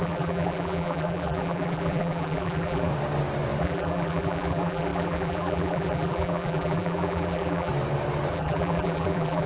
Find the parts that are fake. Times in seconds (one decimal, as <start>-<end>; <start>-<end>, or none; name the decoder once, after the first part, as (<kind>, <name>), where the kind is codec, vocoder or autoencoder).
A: 0.0-2.9 (vocoder, BigVGAN v2); 3.6-7.7; 8.3-9.5